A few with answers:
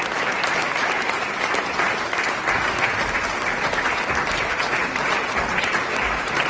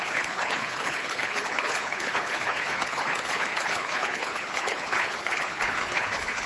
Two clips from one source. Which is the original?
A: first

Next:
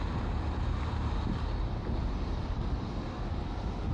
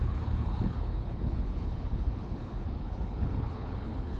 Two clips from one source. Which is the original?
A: first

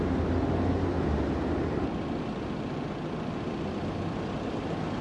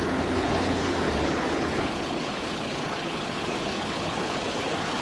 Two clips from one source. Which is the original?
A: first